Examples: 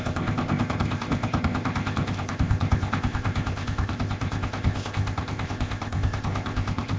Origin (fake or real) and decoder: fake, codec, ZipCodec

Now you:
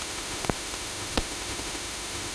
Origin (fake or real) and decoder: fake, autoencoder, DAC-VAE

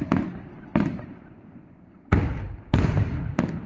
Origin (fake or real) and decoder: fake, vocoder, BigVGAN v2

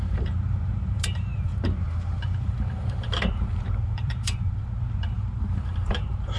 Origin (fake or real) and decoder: fake, vocoder, BigVGAN v2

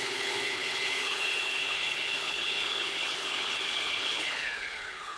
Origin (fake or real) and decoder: fake, codec, HILCodec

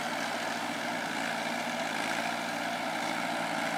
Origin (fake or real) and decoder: real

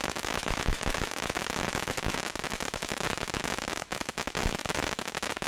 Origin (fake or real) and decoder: fake, autoencoder, DAC-VAE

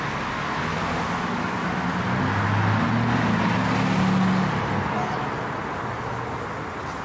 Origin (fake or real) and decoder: real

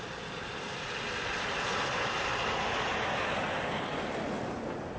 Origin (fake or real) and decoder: real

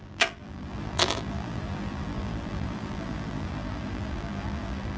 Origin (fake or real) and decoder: fake, vocoder, BigVGAN v2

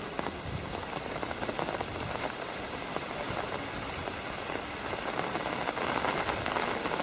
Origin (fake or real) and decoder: real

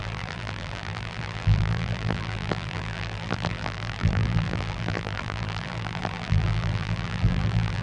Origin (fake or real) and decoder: fake, vocoder, BigVGAN v2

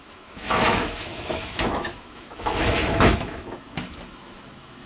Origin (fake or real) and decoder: fake, autoencoder, DAC-VAE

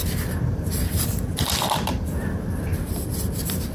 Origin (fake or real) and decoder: real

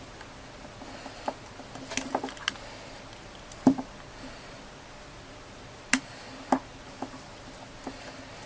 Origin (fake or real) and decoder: real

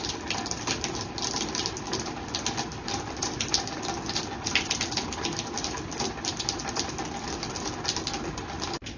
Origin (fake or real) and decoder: real